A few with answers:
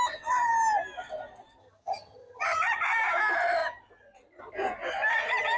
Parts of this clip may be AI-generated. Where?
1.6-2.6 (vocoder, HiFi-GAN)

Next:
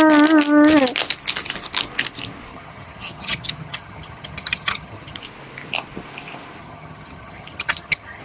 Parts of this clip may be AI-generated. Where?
2.5-5.2 (vocoder, HiFi-GAN); 6.6-8.2

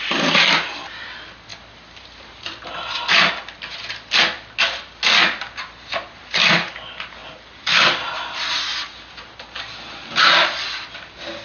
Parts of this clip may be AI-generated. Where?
none

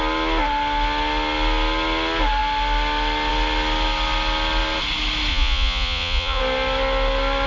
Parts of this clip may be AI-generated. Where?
5.3-6.4 (vocoder, Vocos)

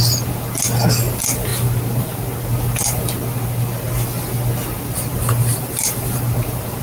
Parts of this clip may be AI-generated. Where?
1.5-2.2 (vocoder, BigVGAN v2); 5.1-6.8